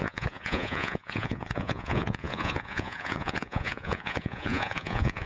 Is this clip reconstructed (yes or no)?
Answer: yes